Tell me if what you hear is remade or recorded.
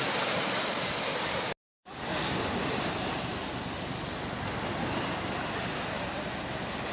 recorded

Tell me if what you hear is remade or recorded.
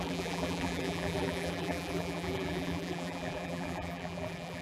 remade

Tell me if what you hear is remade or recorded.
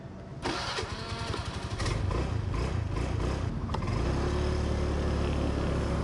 recorded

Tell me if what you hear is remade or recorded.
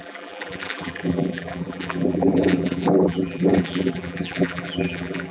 remade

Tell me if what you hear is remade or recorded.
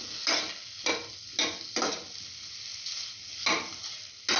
recorded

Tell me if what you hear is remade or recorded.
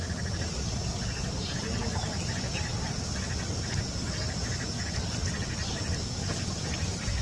recorded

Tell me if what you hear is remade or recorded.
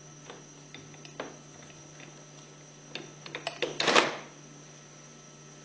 recorded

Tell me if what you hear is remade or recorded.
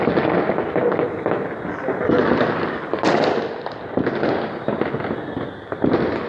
recorded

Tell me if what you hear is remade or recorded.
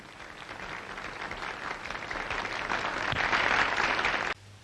remade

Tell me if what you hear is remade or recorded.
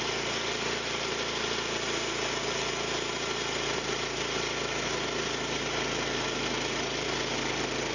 recorded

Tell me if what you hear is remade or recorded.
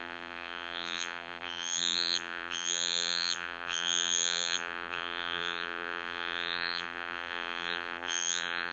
remade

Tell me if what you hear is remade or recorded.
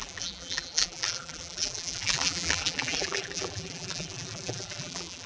remade